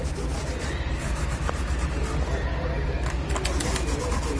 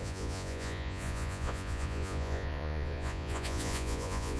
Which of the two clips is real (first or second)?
first